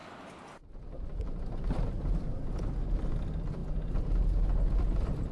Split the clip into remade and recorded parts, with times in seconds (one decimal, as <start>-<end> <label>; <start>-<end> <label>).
0.0-5.3 recorded